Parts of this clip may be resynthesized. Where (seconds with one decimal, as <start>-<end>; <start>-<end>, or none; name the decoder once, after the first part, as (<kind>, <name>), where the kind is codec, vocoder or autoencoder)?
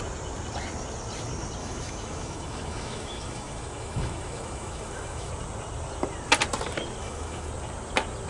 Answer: 1.6-5.3 (autoencoder, DAC-VAE); 7.0-7.5